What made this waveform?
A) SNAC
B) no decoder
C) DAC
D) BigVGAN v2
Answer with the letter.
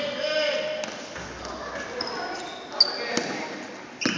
B